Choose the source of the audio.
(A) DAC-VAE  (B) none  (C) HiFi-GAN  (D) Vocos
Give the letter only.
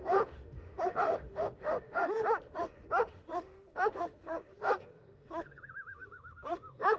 A